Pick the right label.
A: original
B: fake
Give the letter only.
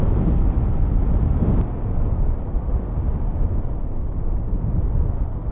A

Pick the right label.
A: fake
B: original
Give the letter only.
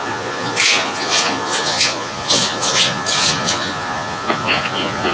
A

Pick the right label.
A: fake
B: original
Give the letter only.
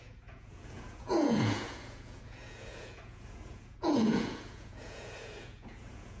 A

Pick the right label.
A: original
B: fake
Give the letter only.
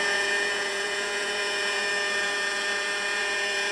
B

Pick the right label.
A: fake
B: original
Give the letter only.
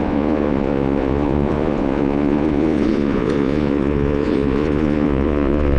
A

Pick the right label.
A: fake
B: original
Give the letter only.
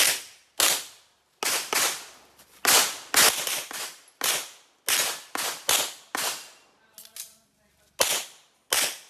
B